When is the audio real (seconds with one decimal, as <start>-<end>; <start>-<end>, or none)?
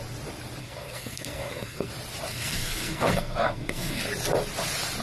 0.0-0.6; 1.9-2.3; 4.0-5.0